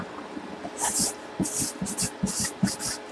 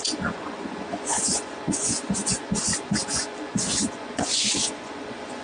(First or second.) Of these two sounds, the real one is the first